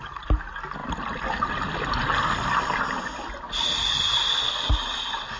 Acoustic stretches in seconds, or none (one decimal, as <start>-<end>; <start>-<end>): 0.0-0.8; 4.0-4.7